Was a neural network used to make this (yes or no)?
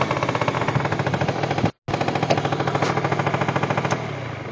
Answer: no